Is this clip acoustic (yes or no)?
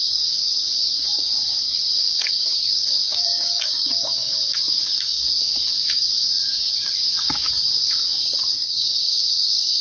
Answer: no